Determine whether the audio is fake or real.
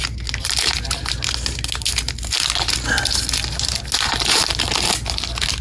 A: real